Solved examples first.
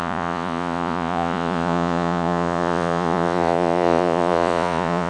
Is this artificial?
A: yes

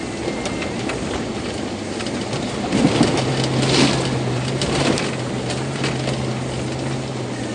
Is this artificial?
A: no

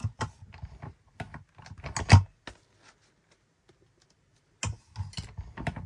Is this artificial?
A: no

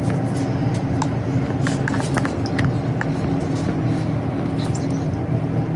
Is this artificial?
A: no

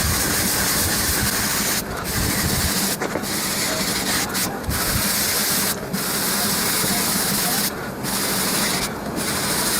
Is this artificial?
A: no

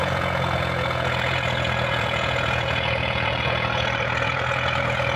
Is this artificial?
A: yes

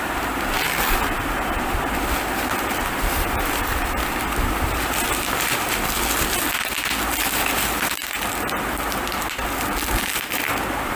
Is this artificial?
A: no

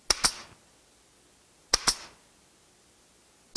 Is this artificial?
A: no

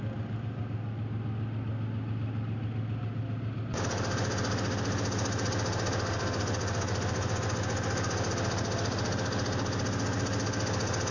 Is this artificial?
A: no